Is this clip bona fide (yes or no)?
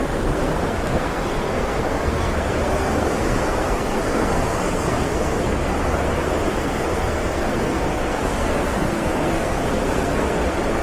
no